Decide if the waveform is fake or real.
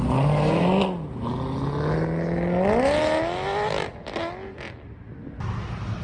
real